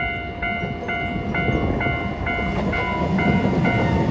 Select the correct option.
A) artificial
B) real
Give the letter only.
B